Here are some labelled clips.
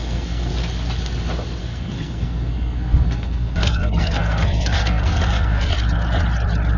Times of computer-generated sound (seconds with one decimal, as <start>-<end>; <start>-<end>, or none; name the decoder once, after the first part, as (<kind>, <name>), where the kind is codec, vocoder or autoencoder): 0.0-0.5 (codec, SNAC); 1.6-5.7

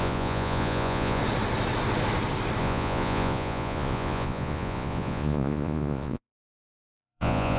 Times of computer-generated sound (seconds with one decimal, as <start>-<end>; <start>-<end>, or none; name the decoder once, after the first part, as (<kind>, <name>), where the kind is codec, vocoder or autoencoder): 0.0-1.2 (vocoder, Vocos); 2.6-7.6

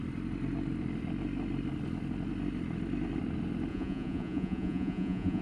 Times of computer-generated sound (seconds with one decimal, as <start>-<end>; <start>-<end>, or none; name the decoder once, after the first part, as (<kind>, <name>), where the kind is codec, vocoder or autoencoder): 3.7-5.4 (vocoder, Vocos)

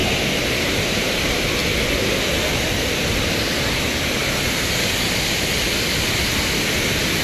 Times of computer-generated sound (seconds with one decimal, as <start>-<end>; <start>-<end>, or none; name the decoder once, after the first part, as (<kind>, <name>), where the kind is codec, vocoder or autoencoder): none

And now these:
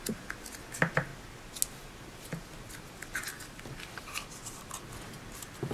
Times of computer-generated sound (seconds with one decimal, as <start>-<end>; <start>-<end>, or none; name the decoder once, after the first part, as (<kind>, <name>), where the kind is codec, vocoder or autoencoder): none

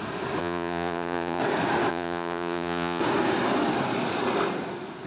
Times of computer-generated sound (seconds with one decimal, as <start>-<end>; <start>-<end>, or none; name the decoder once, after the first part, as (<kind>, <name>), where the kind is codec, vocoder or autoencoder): 0.4-1.4 (vocoder, Vocos); 1.9-3.0